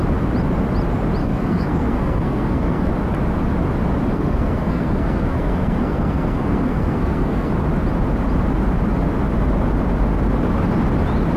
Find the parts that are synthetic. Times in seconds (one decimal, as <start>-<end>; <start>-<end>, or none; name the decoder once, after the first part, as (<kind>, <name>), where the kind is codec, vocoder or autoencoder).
1.2-2.9 (codec, SNAC); 4.1-7.5